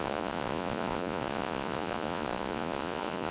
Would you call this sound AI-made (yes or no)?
yes